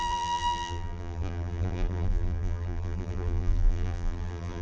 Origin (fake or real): fake